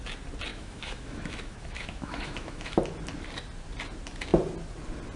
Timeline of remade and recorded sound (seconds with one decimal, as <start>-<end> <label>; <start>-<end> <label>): 0.0-0.5 recorded; 0.5-2.8 remade; 2.8-5.2 recorded